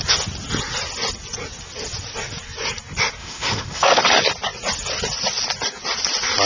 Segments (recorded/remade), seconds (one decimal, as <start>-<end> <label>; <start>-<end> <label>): 0.0-3.2 recorded; 3.2-4.0 remade; 4.0-6.5 recorded

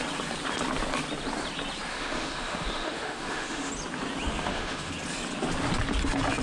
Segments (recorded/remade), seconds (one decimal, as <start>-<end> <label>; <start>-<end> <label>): 0.0-1.9 recorded; 1.9-3.7 remade; 3.7-4.3 recorded; 4.3-4.9 remade; 4.9-6.4 recorded

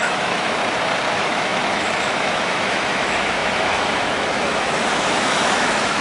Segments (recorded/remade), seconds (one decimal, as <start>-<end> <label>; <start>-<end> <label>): 0.0-0.6 remade; 0.6-1.1 recorded; 1.1-6.0 remade

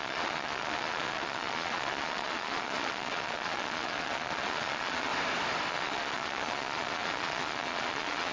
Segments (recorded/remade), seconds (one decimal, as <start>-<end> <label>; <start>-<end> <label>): 0.0-5.1 remade; 5.1-5.7 recorded; 5.7-8.3 remade

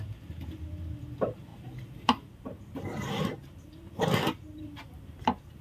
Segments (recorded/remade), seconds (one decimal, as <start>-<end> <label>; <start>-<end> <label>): 0.0-5.6 remade